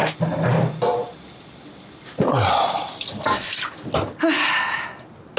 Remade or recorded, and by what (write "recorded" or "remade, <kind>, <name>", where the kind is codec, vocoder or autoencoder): recorded